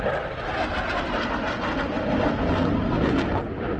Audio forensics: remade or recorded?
recorded